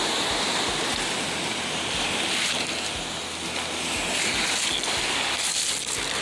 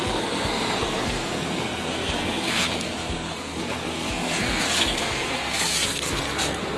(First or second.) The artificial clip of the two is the second